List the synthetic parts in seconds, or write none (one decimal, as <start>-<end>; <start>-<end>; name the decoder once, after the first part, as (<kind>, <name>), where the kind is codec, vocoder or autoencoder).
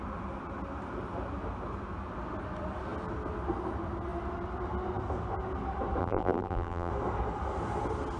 6.0-6.9 (vocoder, BigVGAN v2)